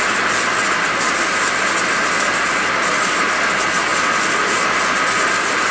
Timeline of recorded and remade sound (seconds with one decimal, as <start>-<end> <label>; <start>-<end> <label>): 0.0-5.7 recorded